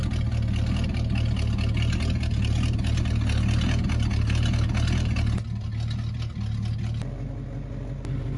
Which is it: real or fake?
real